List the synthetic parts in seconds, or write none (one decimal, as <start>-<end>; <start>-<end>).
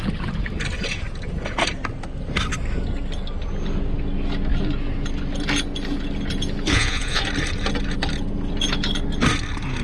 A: 6.7-7.2